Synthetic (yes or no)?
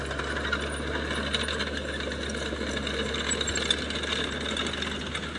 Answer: no